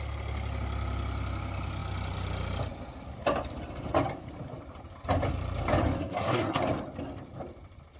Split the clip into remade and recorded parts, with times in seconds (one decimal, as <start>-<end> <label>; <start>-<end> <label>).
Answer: 0.0-6.0 recorded; 6.0-6.6 remade; 6.6-8.0 recorded